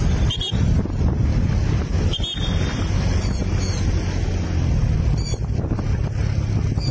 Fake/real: real